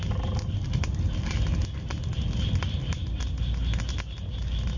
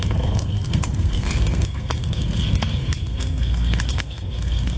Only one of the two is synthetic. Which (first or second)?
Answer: second